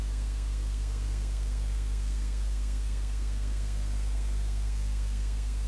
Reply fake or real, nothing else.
fake